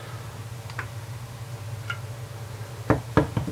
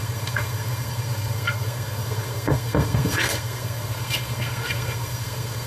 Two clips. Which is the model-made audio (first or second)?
second